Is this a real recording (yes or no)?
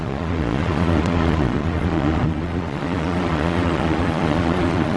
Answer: no